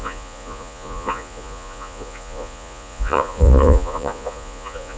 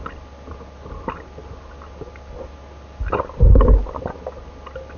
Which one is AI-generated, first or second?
first